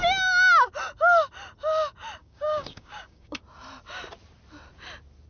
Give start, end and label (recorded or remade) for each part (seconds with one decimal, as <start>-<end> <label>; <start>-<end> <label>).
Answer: 0.0-2.2 recorded; 2.2-3.4 remade; 3.4-5.3 recorded